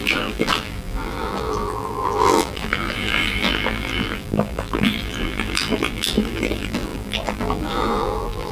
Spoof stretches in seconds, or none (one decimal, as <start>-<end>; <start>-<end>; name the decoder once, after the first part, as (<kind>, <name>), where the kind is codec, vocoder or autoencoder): 0.0-8.5 (vocoder, BigVGAN v2)